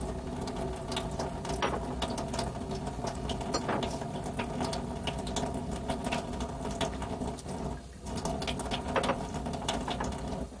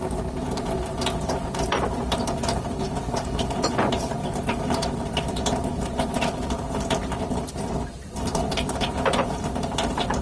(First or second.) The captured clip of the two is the first